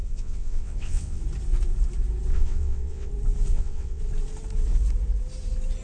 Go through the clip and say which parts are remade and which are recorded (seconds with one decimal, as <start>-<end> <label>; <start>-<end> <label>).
0.0-1.2 remade; 1.2-2.3 recorded; 2.3-3.1 remade; 3.1-3.5 recorded; 3.5-4.0 remade; 4.0-5.8 recorded

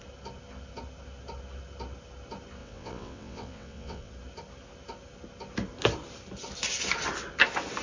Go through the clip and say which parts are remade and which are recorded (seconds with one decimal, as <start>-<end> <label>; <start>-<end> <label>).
0.0-2.6 recorded; 2.6-4.1 remade; 4.1-7.8 recorded

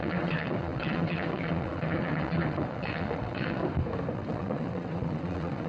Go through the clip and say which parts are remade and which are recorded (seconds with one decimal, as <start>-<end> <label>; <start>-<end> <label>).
0.0-3.6 remade; 3.6-4.1 recorded; 4.1-5.7 remade